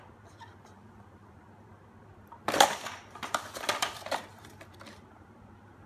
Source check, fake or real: fake